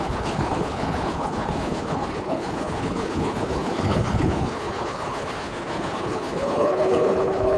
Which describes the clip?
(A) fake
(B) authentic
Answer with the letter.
A